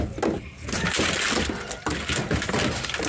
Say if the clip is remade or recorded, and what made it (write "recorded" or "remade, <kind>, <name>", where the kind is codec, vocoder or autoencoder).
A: recorded